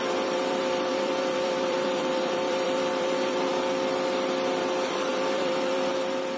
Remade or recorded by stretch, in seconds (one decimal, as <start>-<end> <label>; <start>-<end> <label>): 0.0-3.5 remade; 3.5-5.1 recorded; 5.1-6.4 remade